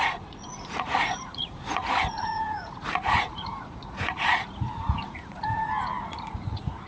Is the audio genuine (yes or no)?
no